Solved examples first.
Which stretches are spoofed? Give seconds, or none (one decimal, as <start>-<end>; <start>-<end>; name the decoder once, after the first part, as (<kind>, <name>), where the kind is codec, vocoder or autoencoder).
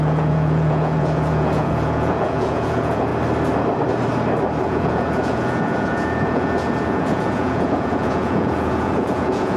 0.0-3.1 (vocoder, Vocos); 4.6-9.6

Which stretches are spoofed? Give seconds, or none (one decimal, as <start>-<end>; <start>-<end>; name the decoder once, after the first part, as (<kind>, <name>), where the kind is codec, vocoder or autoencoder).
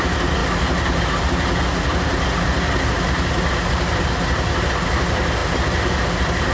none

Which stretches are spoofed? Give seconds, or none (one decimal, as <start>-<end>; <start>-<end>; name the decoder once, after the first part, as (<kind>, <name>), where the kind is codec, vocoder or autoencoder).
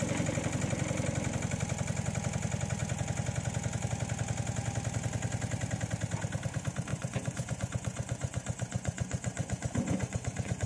6.9-10.7 (vocoder, Vocos)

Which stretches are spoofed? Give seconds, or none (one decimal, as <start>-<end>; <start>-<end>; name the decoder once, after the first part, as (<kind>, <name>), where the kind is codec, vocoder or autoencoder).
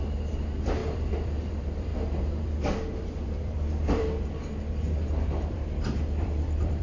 0.0-1.9 (vocoder, BigVGAN v2); 2.4-4.0; 5.2-6.8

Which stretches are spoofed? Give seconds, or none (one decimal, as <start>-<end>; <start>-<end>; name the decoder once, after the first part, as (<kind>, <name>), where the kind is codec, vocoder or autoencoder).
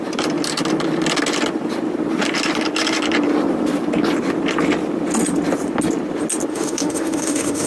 6.5-7.7 (autoencoder, DAC-VAE)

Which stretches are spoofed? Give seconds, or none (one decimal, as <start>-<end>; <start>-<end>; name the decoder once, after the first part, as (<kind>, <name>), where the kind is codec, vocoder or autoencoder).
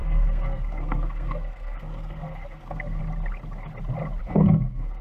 0.0-3.0 (codec, SNAC); 4.2-5.0